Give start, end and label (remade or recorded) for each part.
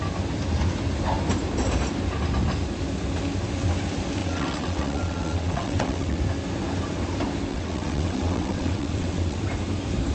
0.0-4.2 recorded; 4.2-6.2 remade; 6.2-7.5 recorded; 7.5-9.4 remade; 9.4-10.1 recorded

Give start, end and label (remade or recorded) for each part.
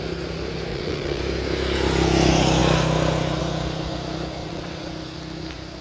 0.0-0.7 recorded; 0.7-1.2 remade; 1.2-4.4 recorded; 4.4-4.9 remade; 4.9-5.8 recorded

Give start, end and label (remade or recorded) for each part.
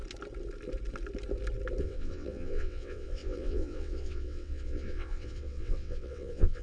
0.0-1.8 recorded; 1.8-6.6 remade